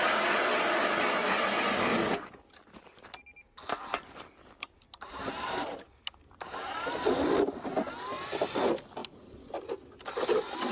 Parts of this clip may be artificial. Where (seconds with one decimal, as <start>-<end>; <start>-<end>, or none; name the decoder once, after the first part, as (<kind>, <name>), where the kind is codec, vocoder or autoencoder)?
none